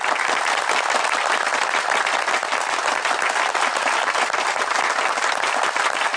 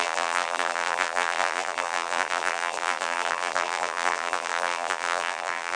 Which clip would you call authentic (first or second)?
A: first